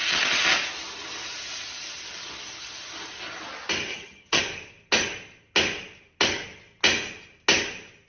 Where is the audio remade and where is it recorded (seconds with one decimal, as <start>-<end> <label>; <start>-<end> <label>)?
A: 0.0-3.9 recorded; 3.9-4.4 remade; 4.4-8.1 recorded